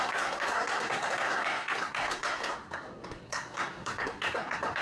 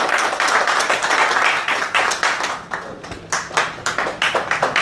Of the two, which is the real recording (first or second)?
second